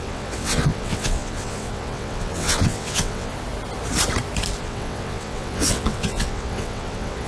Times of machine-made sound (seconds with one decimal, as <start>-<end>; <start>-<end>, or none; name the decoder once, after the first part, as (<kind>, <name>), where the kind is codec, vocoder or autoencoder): 0.0-3.3 (vocoder, WaveNeXt); 4.6-7.3